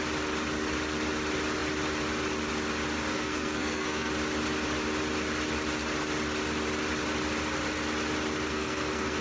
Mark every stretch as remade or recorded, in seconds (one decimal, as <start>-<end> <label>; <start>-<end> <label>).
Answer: 0.0-3.1 recorded; 3.1-4.1 remade; 4.1-8.5 recorded; 8.5-9.2 remade